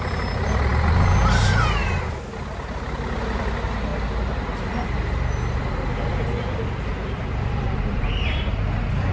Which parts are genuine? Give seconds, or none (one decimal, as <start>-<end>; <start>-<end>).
0.0-6.9; 8.1-9.1